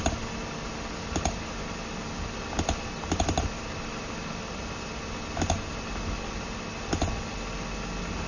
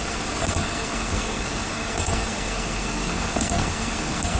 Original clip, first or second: first